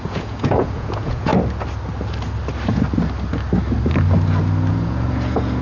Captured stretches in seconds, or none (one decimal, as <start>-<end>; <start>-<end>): 1.3-4.7